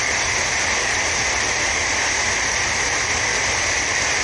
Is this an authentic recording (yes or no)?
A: yes